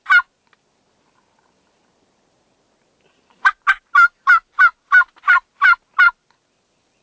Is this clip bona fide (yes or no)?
yes